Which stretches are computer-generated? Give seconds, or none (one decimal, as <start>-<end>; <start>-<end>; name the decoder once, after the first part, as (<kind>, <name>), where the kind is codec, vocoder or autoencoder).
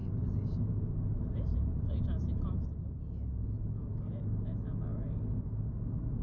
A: 0.0-1.7 (vocoder, BigVGAN v2)